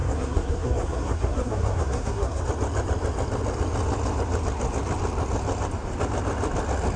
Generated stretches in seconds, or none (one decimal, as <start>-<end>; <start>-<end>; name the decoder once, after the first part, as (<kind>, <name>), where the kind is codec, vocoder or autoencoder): 0.0-2.4 (codec, SNAC)